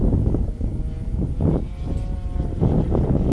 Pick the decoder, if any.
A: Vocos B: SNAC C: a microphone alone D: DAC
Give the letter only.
C